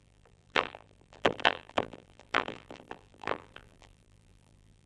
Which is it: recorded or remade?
remade